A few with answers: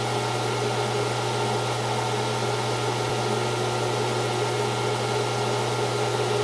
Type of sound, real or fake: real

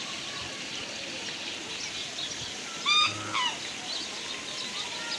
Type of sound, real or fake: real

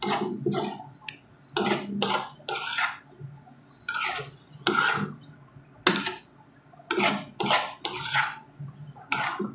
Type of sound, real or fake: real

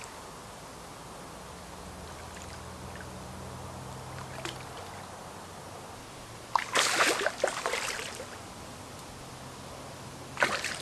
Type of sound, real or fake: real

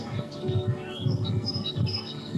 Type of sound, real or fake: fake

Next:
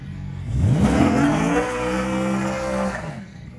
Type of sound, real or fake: fake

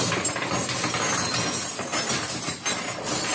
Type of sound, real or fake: real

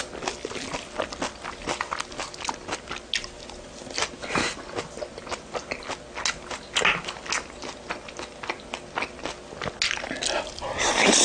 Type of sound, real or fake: real